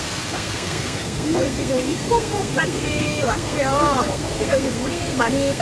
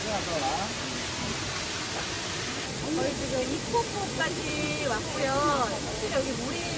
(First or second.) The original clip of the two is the second